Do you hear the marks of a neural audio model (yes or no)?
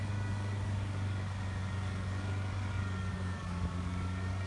yes